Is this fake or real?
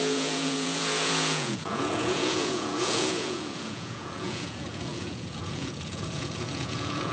fake